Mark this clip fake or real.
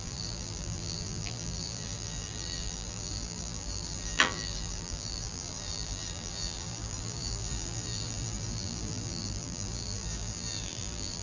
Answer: fake